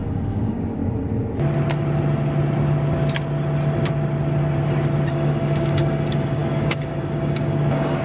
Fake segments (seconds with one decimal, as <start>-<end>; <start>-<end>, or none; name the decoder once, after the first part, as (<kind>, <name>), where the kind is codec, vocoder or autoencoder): 0.0-0.8 (codec, DAC); 5.1-8.0